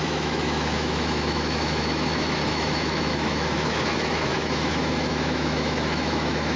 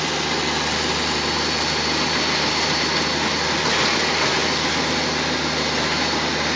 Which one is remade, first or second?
first